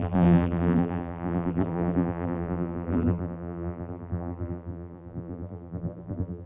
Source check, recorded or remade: remade